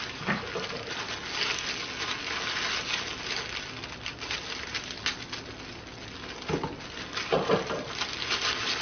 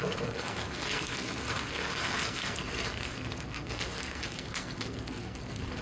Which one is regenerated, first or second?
second